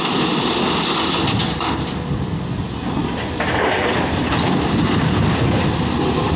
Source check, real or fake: real